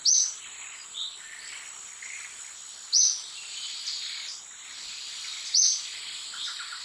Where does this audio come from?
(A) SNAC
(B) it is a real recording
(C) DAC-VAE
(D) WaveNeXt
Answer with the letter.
B